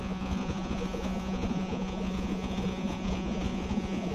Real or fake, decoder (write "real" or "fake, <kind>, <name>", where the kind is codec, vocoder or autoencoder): fake, vocoder, Vocos